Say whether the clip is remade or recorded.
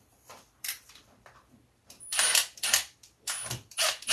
remade